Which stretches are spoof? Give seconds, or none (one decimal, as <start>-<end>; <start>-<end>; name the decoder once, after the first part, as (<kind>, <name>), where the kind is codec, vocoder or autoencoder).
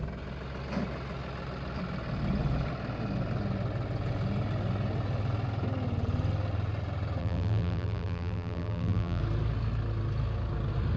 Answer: 7.2-9.2 (vocoder, BigVGAN v2)